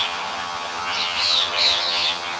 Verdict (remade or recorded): remade